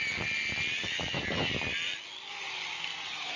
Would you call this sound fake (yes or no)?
no